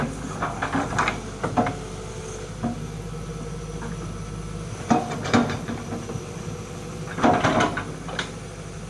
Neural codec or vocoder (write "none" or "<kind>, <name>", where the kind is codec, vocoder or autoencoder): none